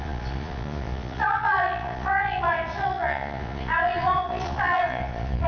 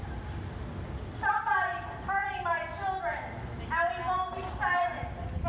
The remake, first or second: first